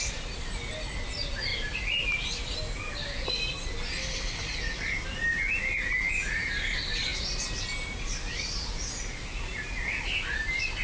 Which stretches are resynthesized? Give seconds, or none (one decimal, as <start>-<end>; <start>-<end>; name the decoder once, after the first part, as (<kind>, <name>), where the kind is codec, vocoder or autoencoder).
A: none